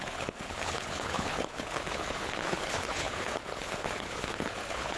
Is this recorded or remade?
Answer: remade